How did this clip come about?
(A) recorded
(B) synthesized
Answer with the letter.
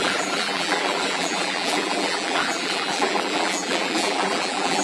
B